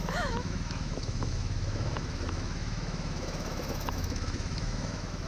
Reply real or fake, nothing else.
fake